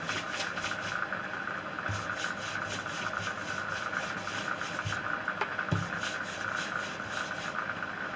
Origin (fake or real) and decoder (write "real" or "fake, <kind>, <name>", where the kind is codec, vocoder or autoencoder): real